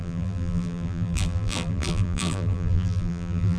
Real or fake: fake